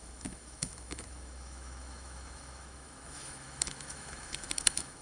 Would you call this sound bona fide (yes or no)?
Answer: no